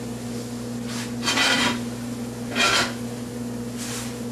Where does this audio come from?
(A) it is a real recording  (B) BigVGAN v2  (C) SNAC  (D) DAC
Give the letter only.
A